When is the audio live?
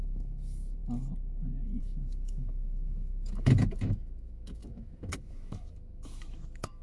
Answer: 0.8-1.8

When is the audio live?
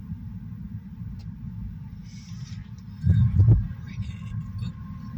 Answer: 0.0-5.2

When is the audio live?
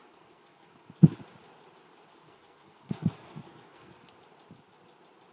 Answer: 1.2-2.1; 4.1-5.3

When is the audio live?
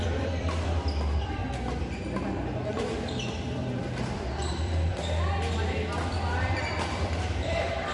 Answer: 1.4-2.8; 4.9-6.9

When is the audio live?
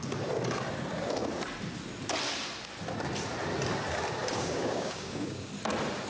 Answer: 0.0-4.2; 5.5-6.1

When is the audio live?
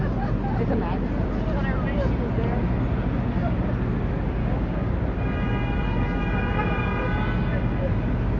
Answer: 0.0-4.4; 4.9-8.4